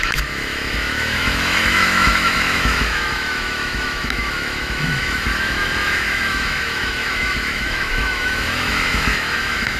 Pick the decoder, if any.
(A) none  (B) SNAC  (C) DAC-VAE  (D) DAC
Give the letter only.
C